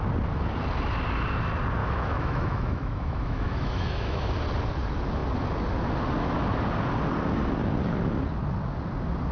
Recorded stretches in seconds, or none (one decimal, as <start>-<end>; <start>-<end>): 0.0-1.8; 4.3-9.3